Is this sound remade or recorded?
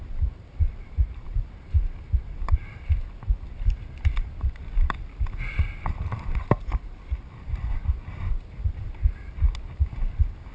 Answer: recorded